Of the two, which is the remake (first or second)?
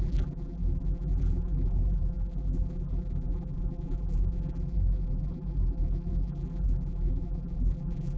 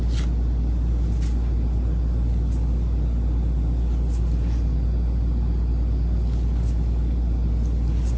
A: first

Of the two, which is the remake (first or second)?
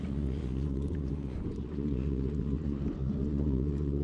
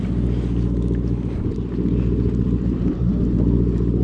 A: first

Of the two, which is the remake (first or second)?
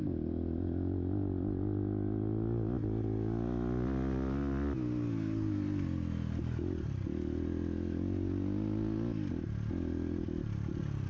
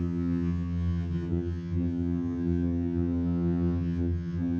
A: second